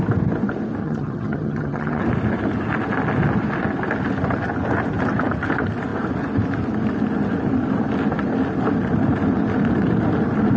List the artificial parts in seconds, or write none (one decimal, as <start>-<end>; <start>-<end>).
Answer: 0.8-2.0